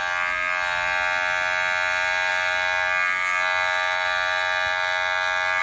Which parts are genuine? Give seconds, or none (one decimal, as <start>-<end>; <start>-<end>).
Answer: 0.0-5.6